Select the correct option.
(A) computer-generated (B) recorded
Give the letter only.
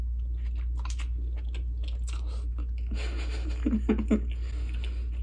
B